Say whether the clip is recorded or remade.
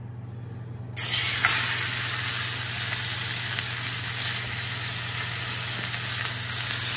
recorded